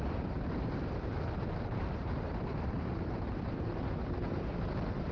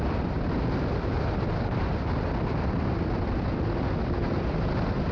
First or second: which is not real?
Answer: first